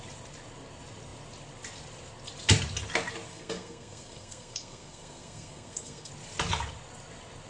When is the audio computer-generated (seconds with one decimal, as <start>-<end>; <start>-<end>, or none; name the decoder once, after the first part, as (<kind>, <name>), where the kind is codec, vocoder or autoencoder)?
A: 3.3-6.1 (codec, SNAC)